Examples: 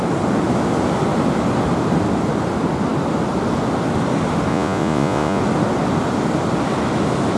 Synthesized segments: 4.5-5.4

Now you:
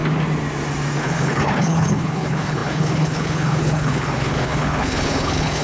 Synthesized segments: 1.0-5.6

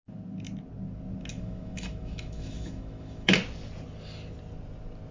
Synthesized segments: 1.3-3.3

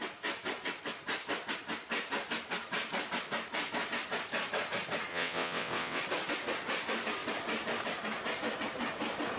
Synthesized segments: 5.1-6.0

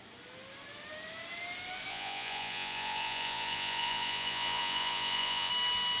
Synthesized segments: 1.9-5.5

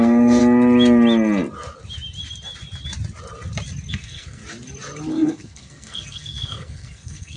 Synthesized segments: 0.0-0.4; 3.9-4.4; 5.1-7.4